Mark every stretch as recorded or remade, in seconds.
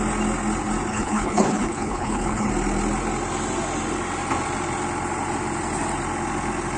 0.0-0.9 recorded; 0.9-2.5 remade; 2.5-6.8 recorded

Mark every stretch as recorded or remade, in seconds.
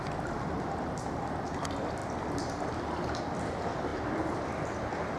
0.0-5.2 recorded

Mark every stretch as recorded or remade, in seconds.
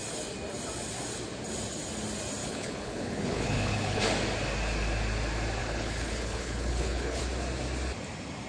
0.0-2.4 recorded; 2.4-4.0 remade; 4.0-5.6 recorded; 5.6-7.2 remade; 7.2-8.5 recorded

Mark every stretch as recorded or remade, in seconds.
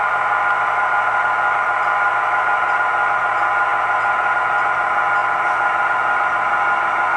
0.0-7.2 recorded